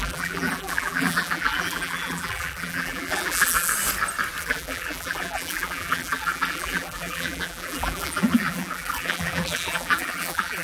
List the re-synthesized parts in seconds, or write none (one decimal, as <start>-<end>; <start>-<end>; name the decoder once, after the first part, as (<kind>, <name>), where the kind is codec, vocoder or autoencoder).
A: 0.0-3.7 (vocoder, BigVGAN v2); 4.4-10.6